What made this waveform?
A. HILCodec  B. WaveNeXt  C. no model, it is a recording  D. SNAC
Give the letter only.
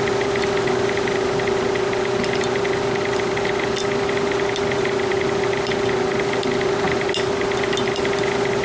C